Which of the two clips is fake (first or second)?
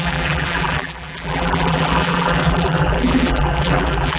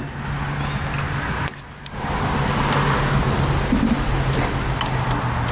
first